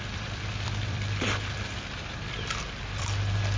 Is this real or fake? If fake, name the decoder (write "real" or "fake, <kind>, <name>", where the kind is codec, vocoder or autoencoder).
fake, vocoder, BigVGAN v2